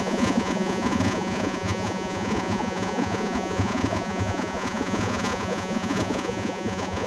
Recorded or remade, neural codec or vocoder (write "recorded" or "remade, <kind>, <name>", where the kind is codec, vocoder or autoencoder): remade, vocoder, Vocos